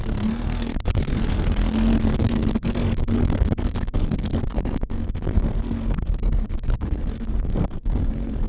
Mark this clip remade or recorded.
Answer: remade